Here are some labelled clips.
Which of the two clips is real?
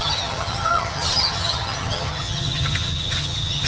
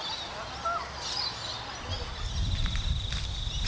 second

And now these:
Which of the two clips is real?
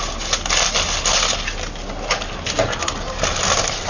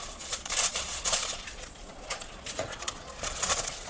first